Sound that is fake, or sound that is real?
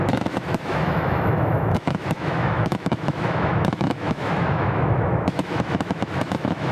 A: fake